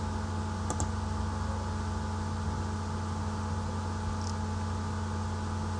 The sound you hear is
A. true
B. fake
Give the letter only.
A